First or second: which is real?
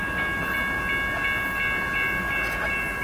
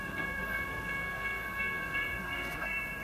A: first